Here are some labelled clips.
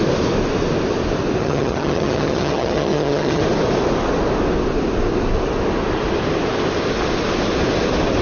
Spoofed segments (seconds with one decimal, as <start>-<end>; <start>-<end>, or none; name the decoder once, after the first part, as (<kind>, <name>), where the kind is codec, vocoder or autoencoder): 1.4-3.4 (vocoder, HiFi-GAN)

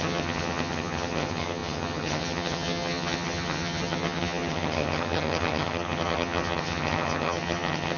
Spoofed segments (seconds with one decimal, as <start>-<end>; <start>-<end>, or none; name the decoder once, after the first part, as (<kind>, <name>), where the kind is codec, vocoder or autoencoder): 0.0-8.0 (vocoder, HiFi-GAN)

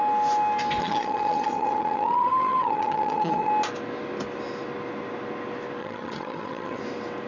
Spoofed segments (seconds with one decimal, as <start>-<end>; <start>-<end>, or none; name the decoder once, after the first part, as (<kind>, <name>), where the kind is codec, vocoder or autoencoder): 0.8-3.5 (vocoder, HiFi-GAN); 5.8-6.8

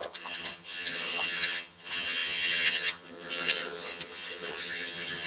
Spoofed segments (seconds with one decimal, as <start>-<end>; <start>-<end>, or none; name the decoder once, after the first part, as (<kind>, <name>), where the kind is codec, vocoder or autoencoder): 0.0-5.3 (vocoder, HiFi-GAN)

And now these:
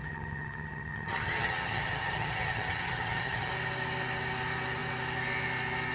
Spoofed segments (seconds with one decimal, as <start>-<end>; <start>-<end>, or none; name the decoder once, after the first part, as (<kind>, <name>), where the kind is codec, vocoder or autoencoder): 0.0-3.5 (vocoder, HiFi-GAN)

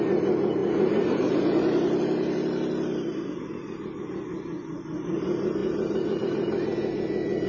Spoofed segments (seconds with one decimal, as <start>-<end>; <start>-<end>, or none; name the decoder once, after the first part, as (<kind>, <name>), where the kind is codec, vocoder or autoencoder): none

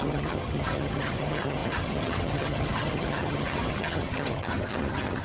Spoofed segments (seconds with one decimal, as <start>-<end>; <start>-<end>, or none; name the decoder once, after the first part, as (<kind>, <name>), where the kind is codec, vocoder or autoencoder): 0.0-5.2 (vocoder, HiFi-GAN)